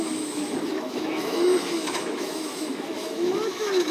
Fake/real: fake